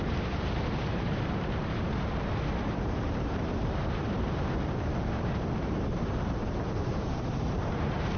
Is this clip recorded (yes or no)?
no